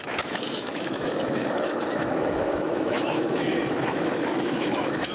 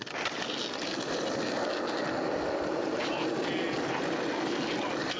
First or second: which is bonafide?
second